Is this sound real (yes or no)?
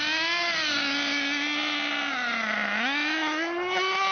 yes